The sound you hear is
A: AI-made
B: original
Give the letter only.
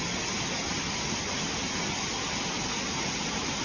B